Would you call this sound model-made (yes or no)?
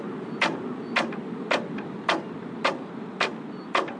no